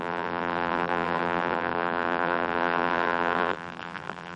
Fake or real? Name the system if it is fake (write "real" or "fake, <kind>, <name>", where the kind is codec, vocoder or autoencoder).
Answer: fake, vocoder, BigVGAN v2